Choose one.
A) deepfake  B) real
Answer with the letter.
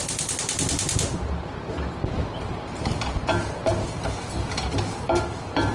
B